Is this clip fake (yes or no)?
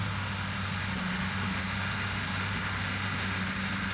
no